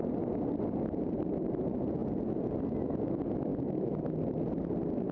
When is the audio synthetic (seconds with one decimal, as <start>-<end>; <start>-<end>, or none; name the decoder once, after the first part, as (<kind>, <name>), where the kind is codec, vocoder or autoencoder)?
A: none